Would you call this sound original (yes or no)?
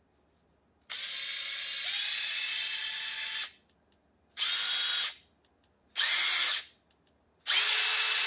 yes